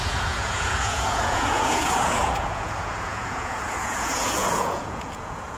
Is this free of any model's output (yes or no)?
no